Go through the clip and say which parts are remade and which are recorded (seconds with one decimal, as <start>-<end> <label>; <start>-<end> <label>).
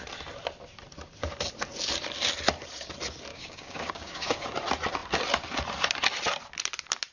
0.0-3.3 recorded; 3.3-4.4 remade; 4.4-7.1 recorded